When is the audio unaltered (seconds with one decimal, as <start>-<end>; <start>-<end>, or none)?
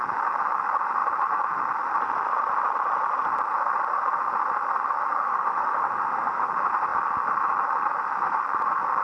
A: 0.0-5.2; 6.5-9.0